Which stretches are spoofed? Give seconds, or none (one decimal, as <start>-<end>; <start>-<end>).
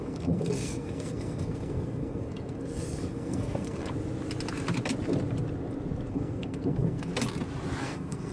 0.0-3.8; 6.1-7.1; 7.8-8.3